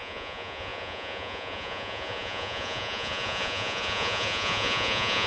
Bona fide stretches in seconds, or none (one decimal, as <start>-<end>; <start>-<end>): none